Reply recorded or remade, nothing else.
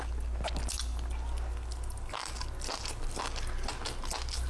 recorded